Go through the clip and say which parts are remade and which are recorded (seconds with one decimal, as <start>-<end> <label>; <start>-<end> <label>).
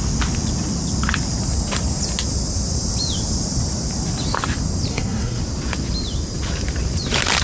0.0-4.9 recorded; 4.9-5.4 remade; 5.4-7.4 recorded